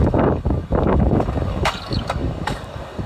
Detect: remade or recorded remade